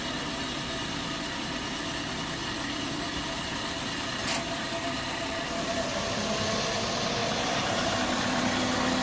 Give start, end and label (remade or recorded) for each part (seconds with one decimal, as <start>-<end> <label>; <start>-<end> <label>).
0.0-2.4 recorded; 2.4-6.6 remade; 6.6-7.2 recorded; 7.2-8.4 remade; 8.4-9.0 recorded